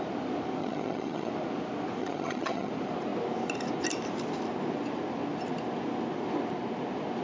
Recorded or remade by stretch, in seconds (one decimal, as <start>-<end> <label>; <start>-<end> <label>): 0.0-0.6 recorded; 0.6-1.3 remade; 1.3-2.0 recorded; 2.0-2.7 remade; 2.7-7.2 recorded